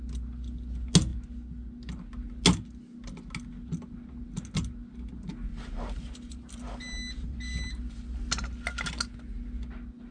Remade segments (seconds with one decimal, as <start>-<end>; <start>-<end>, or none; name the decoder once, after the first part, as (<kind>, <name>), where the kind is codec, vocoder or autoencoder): 5.5-8.3 (vocoder, BigVGAN v2)